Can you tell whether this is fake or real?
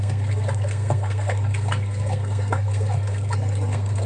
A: fake